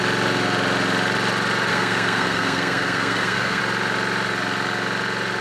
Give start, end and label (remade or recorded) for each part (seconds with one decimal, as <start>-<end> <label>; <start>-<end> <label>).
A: 0.0-1.7 recorded; 1.7-3.6 remade; 3.6-5.4 recorded